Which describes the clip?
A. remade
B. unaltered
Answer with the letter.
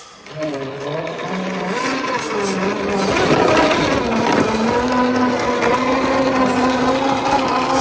B